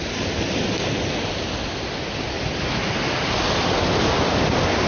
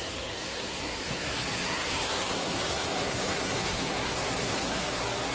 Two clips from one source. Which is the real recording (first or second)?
first